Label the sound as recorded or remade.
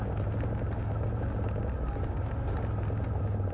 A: recorded